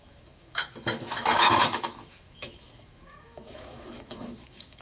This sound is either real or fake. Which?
fake